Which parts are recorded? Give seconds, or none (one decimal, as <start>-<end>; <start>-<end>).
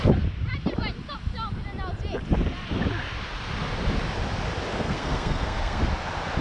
0.0-4.7; 5.8-6.4